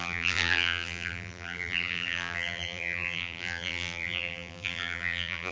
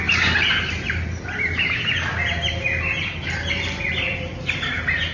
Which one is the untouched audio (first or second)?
second